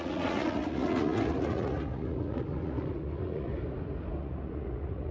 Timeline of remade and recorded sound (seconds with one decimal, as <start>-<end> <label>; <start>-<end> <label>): 0.0-3.5 remade; 3.5-4.2 recorded; 4.2-5.1 remade